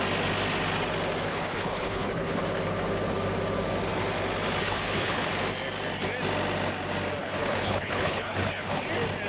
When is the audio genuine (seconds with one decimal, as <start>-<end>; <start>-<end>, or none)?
0.0-1.3; 2.4-4.6; 5.3-7.2; 8.8-9.3